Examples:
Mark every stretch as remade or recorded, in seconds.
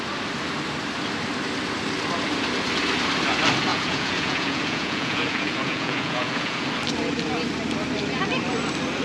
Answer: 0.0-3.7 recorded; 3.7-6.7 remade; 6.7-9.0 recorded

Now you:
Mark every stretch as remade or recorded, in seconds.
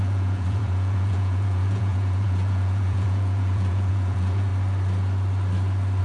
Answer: 0.0-4.5 remade; 4.5-6.0 recorded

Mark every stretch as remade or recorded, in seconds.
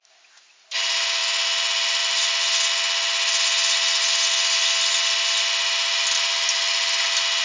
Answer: 0.0-7.4 recorded